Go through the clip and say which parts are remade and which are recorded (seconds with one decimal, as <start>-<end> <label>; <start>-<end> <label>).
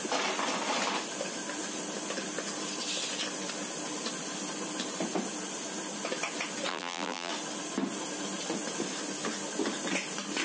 0.0-6.7 recorded; 6.7-7.3 remade; 7.3-10.4 recorded